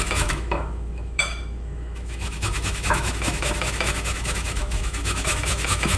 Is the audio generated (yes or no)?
yes